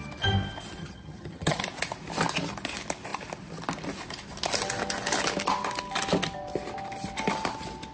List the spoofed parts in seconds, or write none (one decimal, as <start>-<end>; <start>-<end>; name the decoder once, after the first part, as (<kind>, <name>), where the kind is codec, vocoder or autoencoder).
0.8-1.6 (vocoder, HiFi-GAN)